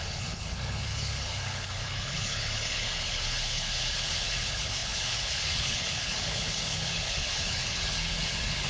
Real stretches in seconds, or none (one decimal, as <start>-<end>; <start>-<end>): none